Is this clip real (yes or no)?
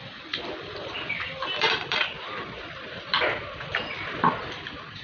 no